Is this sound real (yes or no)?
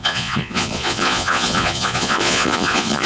no